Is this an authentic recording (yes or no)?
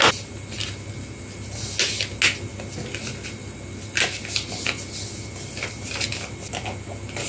yes